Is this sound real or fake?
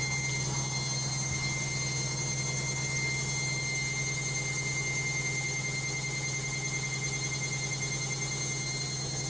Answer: real